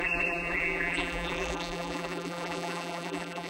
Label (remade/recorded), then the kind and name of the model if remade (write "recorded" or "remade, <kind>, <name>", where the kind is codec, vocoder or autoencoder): remade, vocoder, BigVGAN v2